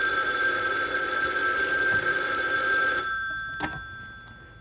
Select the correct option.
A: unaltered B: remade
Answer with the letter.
A